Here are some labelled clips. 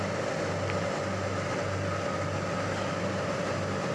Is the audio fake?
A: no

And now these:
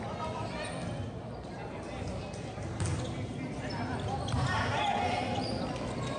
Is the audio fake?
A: no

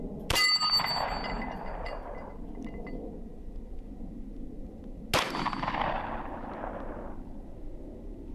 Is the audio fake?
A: no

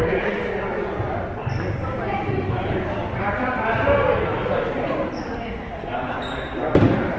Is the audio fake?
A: yes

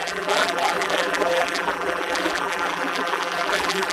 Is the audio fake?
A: yes